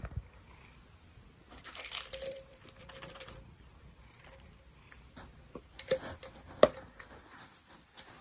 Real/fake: fake